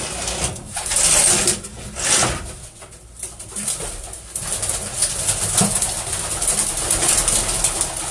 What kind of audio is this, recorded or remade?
recorded